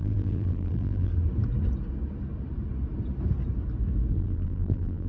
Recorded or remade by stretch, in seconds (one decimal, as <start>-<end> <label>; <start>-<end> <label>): 0.0-1.1 remade; 1.1-4.1 recorded; 4.1-5.1 remade